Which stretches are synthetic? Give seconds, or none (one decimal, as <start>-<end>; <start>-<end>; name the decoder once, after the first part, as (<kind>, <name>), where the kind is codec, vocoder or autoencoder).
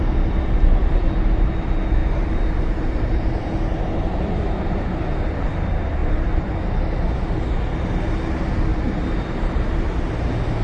2.0-3.0 (vocoder, BigVGAN v2); 6.0-6.5; 8.7-10.0